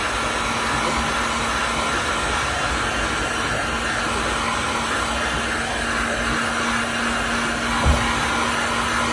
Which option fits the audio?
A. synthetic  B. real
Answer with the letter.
B